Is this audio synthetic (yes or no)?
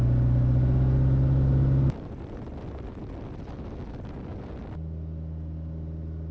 no